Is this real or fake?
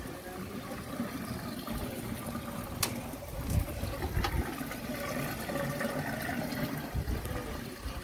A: real